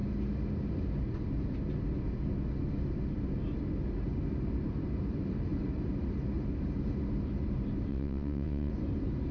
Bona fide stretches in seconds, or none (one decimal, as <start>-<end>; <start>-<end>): 0.0-7.9; 8.7-9.3